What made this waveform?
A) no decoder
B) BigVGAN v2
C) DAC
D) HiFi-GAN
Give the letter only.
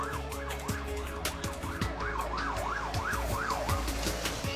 C